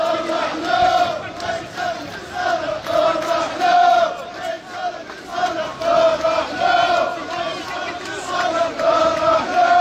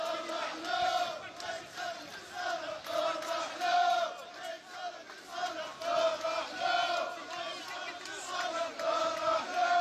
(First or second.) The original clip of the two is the second